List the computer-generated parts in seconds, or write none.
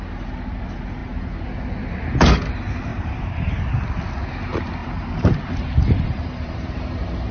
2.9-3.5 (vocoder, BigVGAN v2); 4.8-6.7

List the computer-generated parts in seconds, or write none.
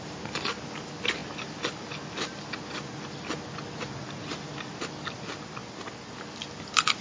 none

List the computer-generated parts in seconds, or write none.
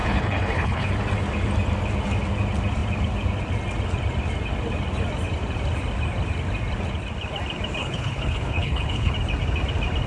0.0-0.9 (codec, HILCodec); 7.8-9.1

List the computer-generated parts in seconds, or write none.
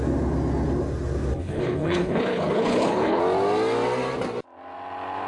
1.4-3.2 (codec, HILCodec)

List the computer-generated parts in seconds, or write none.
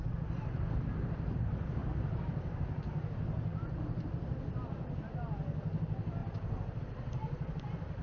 none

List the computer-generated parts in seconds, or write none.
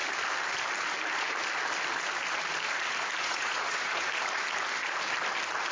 3.2-4.1 (vocoder, Vocos)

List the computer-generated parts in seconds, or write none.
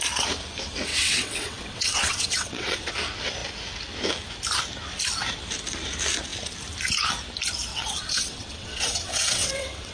0.9-2.9 (vocoder, WaveNeXt); 7.7-9.9